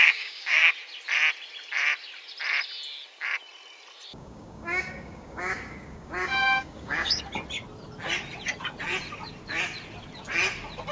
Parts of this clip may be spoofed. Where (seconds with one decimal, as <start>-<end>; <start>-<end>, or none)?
0.0-0.7; 4.1-7.2